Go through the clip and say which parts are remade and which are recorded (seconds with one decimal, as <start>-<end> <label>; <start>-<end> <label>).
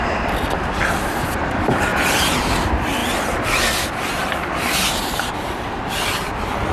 0.0-1.9 remade; 1.9-2.4 recorded; 2.4-6.7 remade